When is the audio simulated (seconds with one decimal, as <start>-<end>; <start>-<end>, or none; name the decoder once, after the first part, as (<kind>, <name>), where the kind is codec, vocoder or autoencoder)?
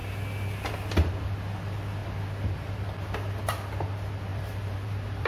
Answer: 4.3-5.3 (vocoder, BigVGAN v2)